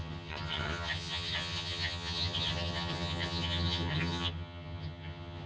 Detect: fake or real fake